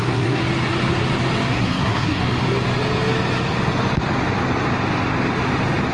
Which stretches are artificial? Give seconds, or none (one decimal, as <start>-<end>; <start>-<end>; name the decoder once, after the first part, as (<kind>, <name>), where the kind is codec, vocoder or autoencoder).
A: 0.0-0.4 (codec, SNAC); 1.5-2.2